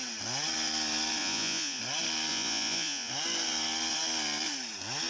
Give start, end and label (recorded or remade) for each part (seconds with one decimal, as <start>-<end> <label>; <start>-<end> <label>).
0.0-1.2 recorded; 1.2-1.8 remade; 1.8-2.3 recorded; 2.3-3.1 remade; 3.1-5.1 recorded